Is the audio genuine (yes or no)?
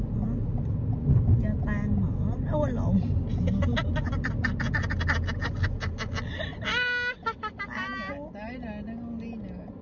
yes